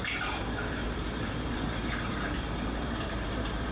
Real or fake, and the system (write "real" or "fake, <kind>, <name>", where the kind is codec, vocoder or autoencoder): fake, vocoder, BigVGAN v2